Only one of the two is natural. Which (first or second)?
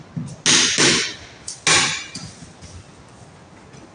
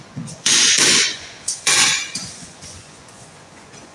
first